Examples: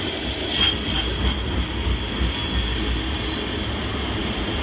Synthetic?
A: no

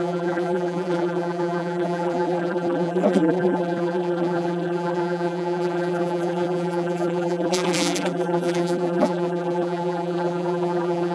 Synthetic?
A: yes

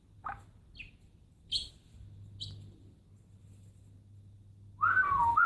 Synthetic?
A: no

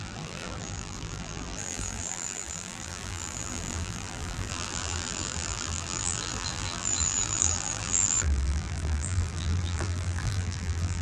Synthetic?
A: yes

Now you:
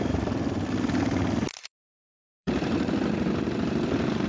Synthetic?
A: yes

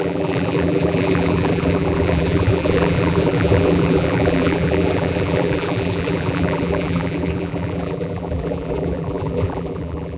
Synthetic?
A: yes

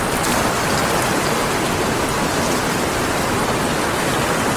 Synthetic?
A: no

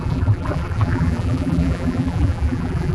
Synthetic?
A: yes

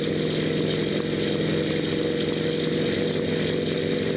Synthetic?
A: no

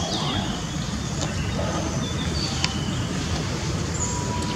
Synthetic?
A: no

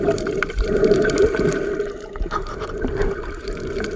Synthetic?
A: yes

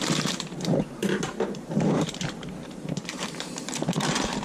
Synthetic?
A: yes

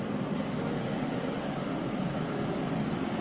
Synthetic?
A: yes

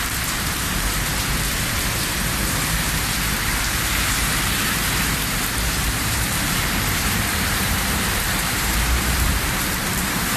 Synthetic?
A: yes